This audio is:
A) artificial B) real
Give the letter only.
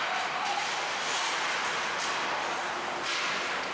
B